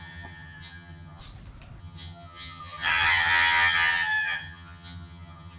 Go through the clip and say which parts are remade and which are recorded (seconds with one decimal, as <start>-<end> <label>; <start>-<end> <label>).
0.0-1.2 remade; 1.2-1.8 recorded; 1.8-5.6 remade